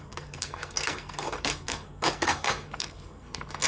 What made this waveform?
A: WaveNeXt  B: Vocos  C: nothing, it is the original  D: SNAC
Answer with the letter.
D